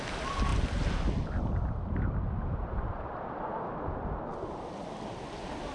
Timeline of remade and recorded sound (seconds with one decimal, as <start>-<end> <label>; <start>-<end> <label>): 0.0-5.7 recorded